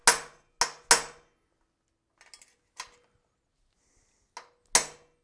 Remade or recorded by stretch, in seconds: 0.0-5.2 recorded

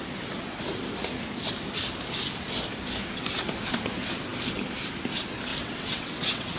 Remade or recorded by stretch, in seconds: 0.0-5.5 recorded; 5.5-6.6 remade

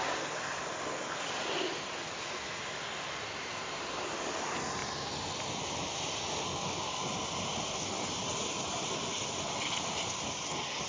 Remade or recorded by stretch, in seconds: 0.0-10.9 recorded

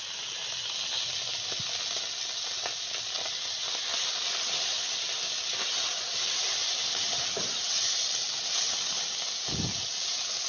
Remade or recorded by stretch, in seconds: 0.0-10.5 recorded

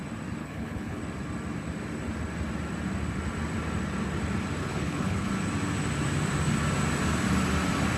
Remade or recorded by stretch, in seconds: 0.0-0.4 recorded; 0.4-1.0 remade; 1.0-4.6 recorded; 4.6-5.3 remade; 5.3-8.0 recorded

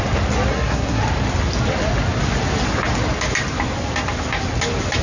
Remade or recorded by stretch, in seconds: 0.0-0.5 recorded; 0.5-1.0 remade; 1.0-5.0 recorded